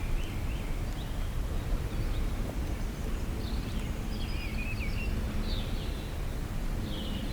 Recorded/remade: recorded